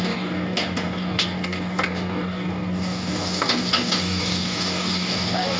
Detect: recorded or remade remade